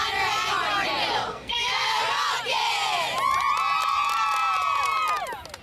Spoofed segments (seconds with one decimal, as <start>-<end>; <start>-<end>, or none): 1.3-2.0